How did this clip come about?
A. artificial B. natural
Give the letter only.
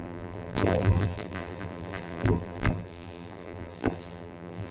A